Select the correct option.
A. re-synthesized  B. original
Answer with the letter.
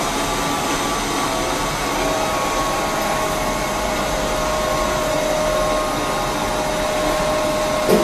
B